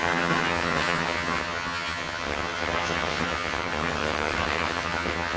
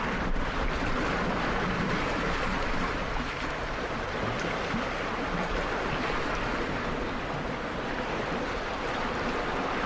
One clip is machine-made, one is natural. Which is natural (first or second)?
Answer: second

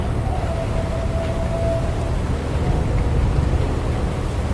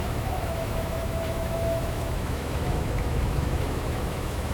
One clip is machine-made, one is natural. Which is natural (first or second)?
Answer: first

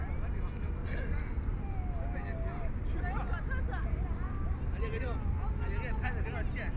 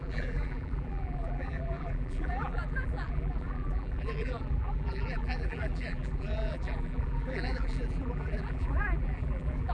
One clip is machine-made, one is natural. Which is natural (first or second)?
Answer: first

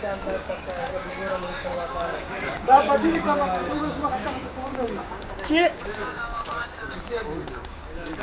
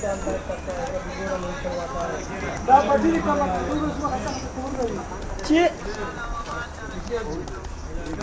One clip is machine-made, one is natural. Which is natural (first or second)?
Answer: second